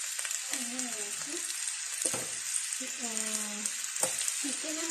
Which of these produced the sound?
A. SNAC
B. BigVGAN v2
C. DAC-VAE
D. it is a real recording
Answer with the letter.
D